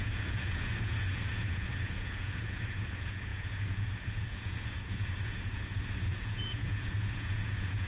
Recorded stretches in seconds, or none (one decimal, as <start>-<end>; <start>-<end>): none